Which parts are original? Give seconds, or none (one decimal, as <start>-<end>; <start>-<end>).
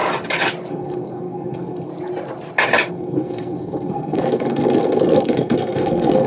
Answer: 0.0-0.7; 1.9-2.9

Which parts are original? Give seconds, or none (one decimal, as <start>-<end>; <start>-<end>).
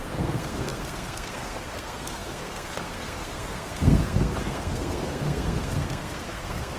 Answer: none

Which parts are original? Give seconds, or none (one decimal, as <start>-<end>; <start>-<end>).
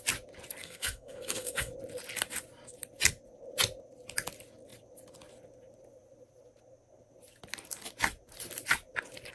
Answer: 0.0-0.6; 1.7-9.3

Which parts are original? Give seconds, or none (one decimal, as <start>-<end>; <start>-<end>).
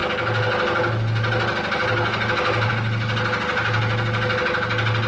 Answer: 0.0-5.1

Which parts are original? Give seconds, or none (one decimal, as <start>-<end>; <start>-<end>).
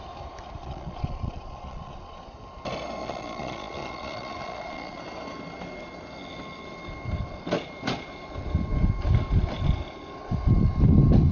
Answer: 0.0-0.6; 2.2-3.0; 5.0-11.3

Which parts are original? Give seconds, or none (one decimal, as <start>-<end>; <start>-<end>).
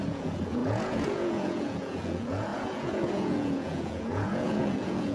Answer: none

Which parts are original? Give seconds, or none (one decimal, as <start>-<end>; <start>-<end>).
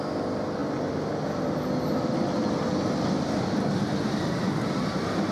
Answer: 0.0-5.3